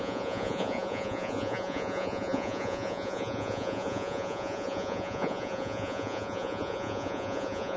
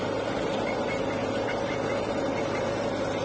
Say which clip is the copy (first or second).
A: first